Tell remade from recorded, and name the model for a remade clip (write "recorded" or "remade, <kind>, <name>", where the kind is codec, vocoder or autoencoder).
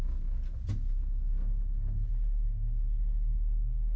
recorded